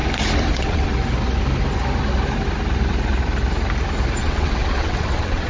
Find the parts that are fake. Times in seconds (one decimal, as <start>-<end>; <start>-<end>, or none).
0.5-0.9; 4.2-5.5